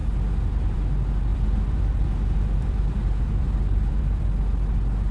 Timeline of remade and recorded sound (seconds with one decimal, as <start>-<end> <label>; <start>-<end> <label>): 0.0-0.9 remade; 0.9-1.3 recorded; 1.3-4.4 remade; 4.4-5.1 recorded